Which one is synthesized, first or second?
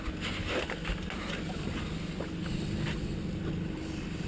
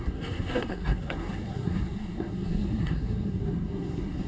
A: second